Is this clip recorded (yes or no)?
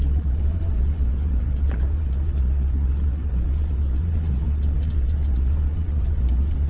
no